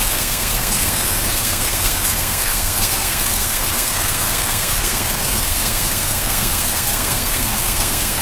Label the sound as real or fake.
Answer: fake